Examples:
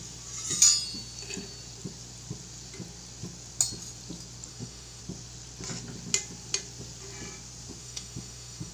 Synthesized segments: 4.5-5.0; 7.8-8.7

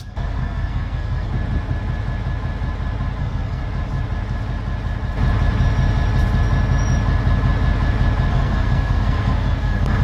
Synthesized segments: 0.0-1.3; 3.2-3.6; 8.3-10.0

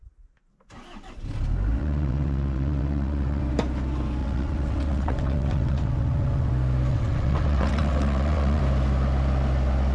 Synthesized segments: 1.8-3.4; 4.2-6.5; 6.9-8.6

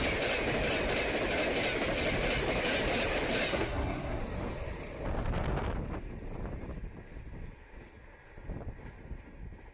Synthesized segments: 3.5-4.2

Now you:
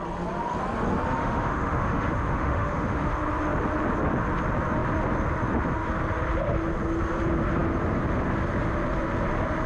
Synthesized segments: 1.2-3.1

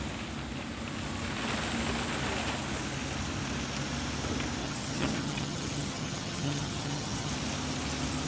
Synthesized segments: 4.6-7.3